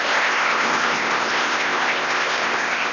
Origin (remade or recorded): remade